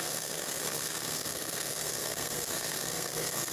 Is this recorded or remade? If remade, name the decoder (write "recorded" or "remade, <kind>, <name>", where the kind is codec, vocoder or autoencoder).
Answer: remade, codec, SNAC